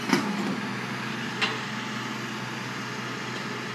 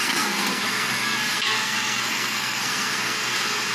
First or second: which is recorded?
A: first